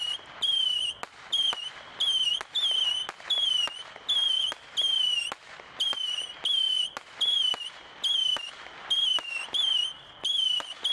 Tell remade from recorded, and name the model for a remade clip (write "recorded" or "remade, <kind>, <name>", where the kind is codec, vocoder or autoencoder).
recorded